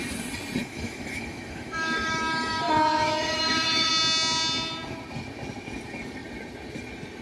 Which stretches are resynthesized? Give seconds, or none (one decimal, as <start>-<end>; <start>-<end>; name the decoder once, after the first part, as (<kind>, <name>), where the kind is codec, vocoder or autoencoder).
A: 0.6-3.9 (autoencoder, DAC-VAE)